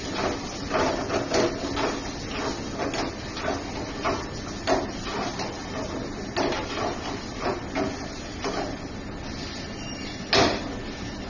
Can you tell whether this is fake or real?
real